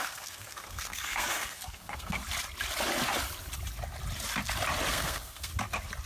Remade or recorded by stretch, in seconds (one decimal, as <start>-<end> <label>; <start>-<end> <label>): 0.0-2.2 remade; 2.2-4.9 recorded; 4.9-5.5 remade; 5.5-6.1 recorded